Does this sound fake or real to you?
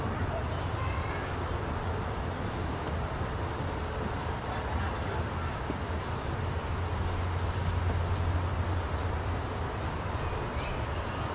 real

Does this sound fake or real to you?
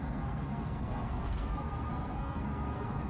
fake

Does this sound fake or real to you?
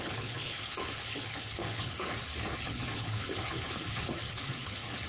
fake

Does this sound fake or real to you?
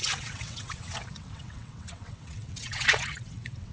fake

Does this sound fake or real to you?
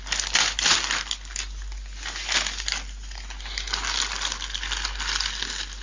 real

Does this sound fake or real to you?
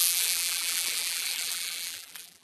fake